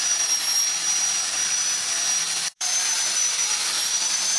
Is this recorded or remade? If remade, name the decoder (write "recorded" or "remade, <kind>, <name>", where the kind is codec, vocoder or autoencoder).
remade, vocoder, BigVGAN v2